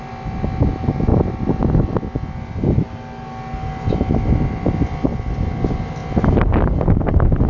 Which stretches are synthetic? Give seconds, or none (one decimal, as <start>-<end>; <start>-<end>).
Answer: none